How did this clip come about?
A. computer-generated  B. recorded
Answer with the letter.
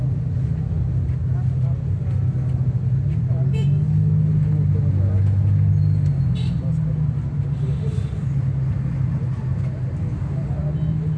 B